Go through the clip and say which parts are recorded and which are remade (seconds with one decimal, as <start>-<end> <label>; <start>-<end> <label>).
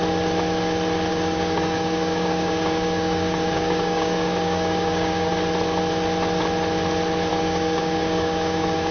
0.0-1.1 recorded; 1.1-5.3 remade; 5.3-7.3 recorded; 7.3-8.9 remade